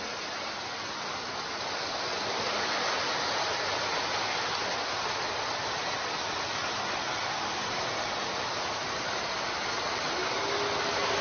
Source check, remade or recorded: recorded